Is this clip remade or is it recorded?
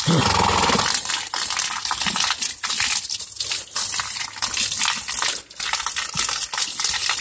recorded